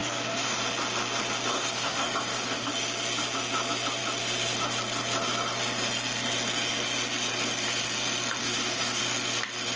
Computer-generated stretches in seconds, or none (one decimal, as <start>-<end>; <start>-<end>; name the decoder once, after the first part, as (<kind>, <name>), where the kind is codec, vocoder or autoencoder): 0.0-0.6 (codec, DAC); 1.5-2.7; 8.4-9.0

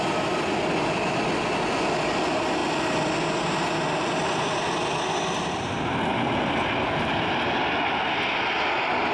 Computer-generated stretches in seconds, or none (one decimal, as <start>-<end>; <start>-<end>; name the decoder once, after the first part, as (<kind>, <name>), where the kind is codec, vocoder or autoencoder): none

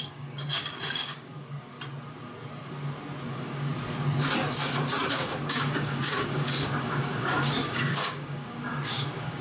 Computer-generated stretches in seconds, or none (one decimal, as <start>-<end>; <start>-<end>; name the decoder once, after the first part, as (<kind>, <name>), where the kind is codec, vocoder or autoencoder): 0.0-1.3 (codec, DAC); 3.3-3.7; 5.1-9.4